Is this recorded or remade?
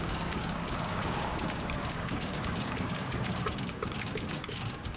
remade